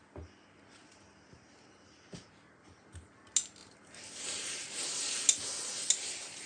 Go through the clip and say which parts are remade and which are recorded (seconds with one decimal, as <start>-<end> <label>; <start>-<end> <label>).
0.0-6.5 recorded